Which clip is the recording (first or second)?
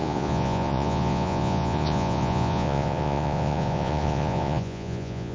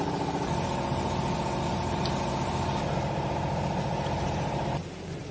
second